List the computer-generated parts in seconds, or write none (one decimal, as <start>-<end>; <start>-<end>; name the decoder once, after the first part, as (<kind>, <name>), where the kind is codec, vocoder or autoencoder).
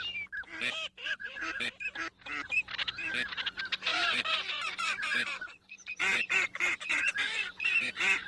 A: 1.0-1.7 (vocoder, Vocos); 3.9-8.3